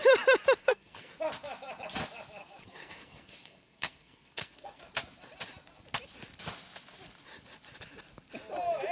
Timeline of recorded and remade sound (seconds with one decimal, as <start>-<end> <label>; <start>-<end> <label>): 0.0-0.6 recorded; 0.6-1.1 remade; 1.1-2.4 recorded; 2.4-4.8 remade; 4.8-8.9 recorded